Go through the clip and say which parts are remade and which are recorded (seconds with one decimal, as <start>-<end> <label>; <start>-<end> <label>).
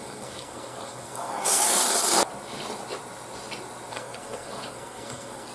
0.0-1.8 remade; 1.8-3.9 recorded; 3.9-5.5 remade